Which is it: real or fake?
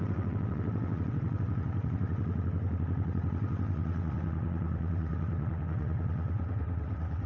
fake